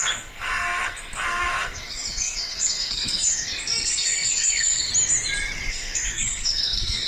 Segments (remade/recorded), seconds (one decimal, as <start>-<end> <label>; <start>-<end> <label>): 0.0-4.9 remade; 4.9-5.7 recorded; 5.7-7.1 remade